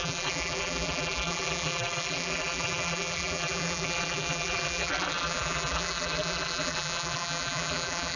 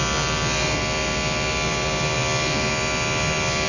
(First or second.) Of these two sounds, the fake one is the first